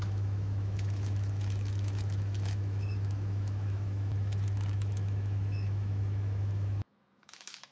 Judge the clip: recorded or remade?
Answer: remade